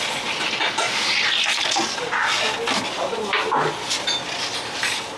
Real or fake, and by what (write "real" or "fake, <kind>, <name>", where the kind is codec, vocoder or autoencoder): real